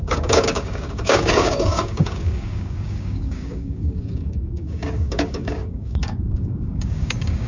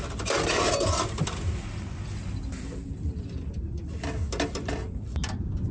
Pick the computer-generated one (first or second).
first